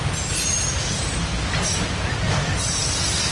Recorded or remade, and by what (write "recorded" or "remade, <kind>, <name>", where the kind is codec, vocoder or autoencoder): recorded